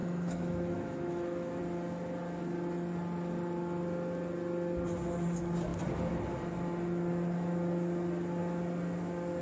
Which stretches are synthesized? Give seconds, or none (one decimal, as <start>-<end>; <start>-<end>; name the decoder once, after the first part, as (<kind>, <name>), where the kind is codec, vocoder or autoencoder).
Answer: 0.0-1.6 (autoencoder, DAC-VAE)